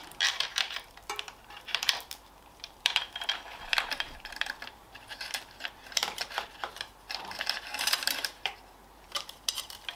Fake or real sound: fake